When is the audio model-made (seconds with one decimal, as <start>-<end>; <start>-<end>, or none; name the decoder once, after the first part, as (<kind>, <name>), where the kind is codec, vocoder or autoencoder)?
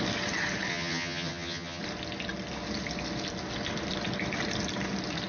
0.7-1.8 (vocoder, HiFi-GAN)